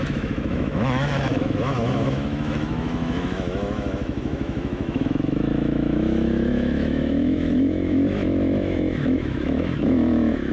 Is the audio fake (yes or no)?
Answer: yes